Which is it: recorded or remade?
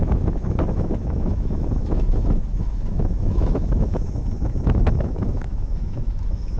remade